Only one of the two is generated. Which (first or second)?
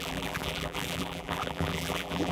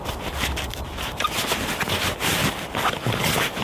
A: first